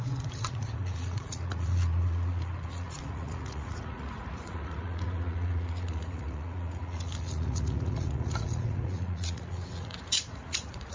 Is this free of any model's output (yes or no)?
no